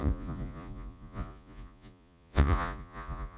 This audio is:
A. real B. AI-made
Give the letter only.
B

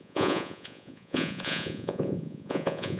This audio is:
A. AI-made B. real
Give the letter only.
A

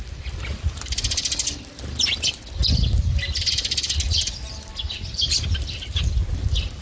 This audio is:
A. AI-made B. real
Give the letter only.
B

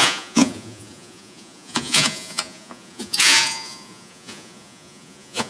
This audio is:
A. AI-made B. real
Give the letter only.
A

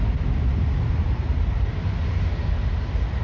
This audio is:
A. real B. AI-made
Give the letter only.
A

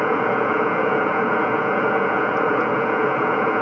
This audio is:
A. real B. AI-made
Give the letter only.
B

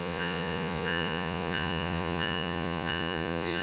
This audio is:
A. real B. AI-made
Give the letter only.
B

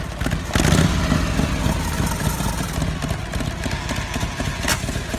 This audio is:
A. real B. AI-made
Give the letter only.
A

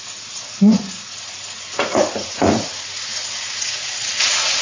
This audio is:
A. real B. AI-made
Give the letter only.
B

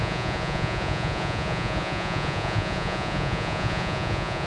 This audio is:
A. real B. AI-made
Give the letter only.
B